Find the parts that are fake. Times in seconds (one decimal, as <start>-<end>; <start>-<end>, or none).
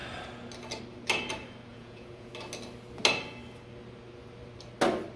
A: 1.7-2.3